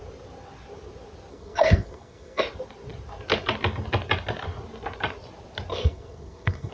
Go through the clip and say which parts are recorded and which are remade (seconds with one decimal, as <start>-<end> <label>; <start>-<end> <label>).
0.0-1.3 recorded; 1.3-2.4 remade; 2.4-5.7 recorded; 5.7-6.7 remade